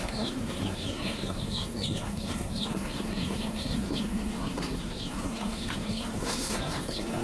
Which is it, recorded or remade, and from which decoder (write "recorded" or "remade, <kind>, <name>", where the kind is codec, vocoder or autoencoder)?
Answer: remade, codec, SNAC